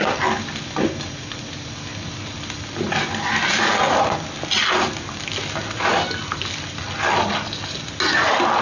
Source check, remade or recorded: recorded